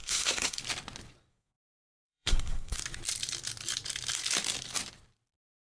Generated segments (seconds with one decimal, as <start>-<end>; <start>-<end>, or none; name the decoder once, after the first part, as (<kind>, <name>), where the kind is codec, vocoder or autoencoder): 0.0-0.6 (codec, SNAC); 1.3-2.8

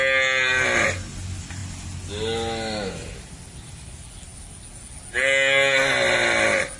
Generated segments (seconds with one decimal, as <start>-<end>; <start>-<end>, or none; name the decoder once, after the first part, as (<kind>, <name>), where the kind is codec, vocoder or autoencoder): none

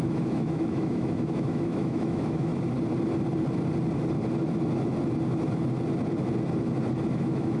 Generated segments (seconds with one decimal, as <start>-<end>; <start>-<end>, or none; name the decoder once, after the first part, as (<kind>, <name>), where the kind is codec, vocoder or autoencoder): 0.0-2.5 (autoencoder, DAC-VAE); 7.1-7.6

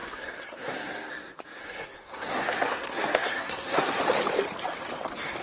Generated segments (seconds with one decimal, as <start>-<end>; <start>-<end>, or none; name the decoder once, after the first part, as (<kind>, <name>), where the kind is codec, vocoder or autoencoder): 0.0-1.1 (codec, SNAC); 1.6-4.0

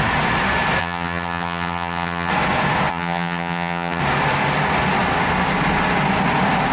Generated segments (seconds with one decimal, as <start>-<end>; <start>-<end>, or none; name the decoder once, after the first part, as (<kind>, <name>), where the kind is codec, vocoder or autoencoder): 0.8-2.3 (vocoder, HiFi-GAN); 2.9-4.0

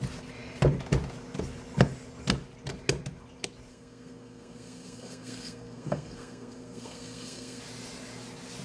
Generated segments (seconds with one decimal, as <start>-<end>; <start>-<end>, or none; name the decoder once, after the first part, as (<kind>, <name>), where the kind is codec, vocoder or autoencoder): 3.7-7.6 (codec, SNAC)

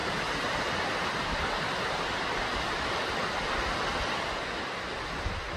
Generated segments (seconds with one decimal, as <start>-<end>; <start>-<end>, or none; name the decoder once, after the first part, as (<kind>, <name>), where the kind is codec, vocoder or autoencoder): none

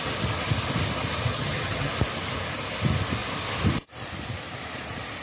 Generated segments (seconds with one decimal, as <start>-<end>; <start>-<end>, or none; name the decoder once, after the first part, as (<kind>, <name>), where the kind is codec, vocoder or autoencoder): 1.3-1.9 (vocoder, HiFi-GAN)